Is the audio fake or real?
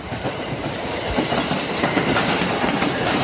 fake